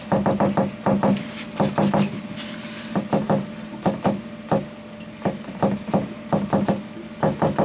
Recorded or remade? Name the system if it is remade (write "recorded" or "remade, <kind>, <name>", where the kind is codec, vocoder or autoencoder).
recorded